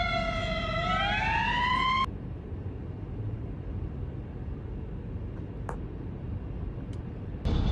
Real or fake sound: real